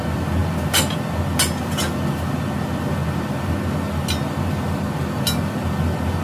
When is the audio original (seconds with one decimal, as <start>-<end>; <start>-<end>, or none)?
0.0-6.2